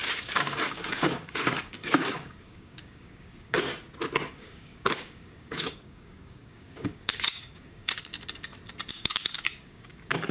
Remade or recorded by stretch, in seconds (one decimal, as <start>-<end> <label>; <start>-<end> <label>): 0.0-3.7 remade; 3.7-4.3 recorded; 4.3-8.1 remade; 8.1-8.9 recorded; 8.9-10.3 remade